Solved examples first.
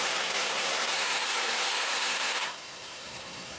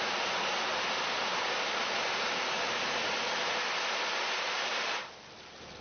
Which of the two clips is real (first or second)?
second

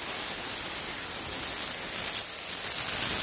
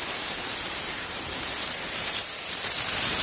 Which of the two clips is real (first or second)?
first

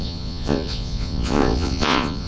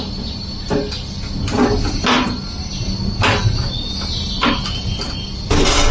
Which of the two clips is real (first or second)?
second